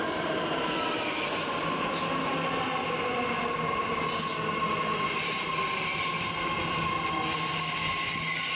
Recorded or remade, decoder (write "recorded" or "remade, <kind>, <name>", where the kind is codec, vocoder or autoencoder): recorded